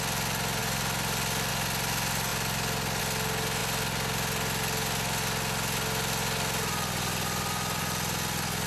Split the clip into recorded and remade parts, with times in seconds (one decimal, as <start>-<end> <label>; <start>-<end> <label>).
0.0-8.7 recorded